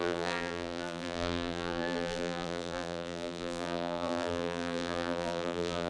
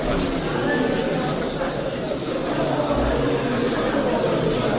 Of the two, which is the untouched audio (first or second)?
second